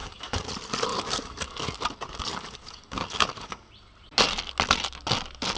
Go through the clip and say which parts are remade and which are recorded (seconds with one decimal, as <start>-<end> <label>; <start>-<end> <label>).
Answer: 0.0-0.5 remade; 0.5-0.9 recorded; 0.9-1.8 remade; 1.8-2.3 recorded; 2.3-3.7 remade; 3.7-5.6 recorded